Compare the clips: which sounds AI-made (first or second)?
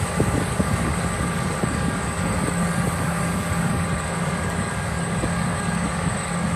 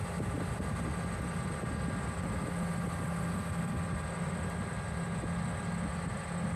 first